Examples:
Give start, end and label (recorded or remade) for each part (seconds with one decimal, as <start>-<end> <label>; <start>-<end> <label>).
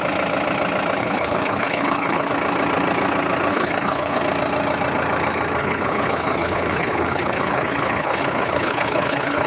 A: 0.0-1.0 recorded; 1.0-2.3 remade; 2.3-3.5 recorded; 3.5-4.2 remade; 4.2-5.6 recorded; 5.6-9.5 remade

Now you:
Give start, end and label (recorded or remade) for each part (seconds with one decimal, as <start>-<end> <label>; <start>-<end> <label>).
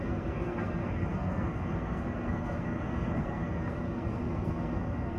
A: 0.0-5.2 remade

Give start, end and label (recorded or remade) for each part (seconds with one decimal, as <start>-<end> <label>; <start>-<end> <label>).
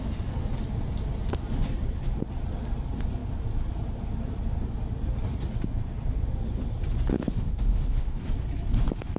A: 0.0-7.1 recorded; 7.1-8.2 remade; 8.2-9.2 recorded